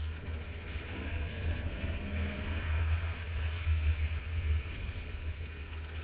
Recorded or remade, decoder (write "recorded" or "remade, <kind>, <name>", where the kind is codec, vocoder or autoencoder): remade, codec, SNAC